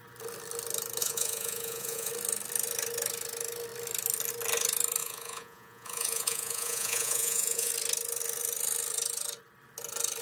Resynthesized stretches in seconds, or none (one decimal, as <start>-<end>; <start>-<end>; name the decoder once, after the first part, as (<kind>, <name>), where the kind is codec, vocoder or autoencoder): 1.0-2.1 (vocoder, Vocos); 5.0-7.7